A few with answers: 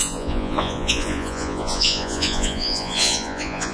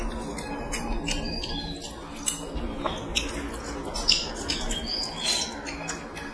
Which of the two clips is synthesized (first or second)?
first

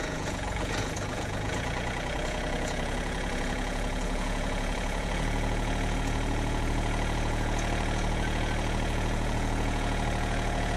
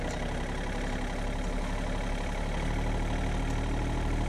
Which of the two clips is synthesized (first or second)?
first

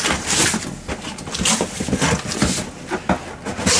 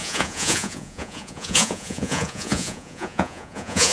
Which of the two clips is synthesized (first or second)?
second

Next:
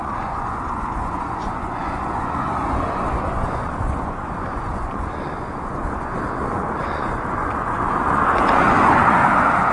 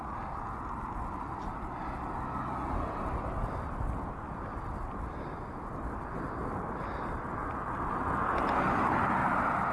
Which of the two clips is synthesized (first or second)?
first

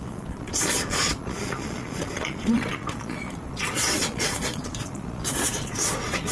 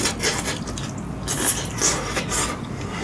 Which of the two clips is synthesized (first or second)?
first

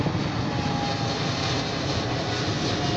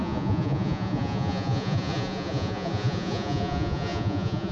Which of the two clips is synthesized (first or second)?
second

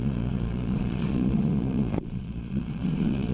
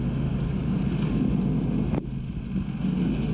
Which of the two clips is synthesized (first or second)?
first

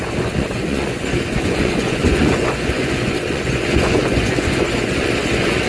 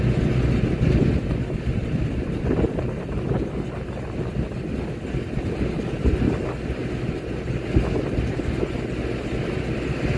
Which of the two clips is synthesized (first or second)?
first